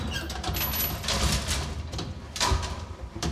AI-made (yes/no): no